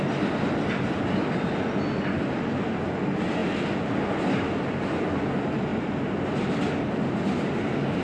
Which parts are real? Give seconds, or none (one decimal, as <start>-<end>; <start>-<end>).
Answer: 0.0-8.0

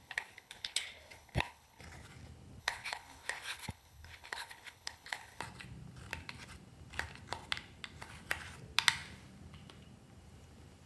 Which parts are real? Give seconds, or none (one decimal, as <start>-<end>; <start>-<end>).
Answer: 1.8-2.6; 5.4-10.9

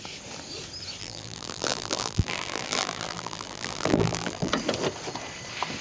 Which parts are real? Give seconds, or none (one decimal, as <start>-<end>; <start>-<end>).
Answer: 0.0-1.0; 4.5-5.8

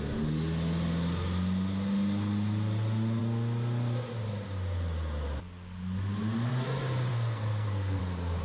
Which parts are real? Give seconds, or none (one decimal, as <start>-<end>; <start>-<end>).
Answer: 0.0-7.1; 8.0-8.4